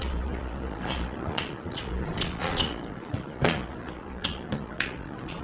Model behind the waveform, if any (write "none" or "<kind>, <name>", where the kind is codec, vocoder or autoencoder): vocoder, Vocos